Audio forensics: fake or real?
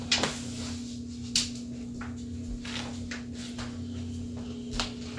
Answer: real